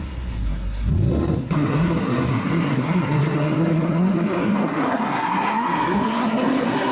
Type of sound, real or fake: fake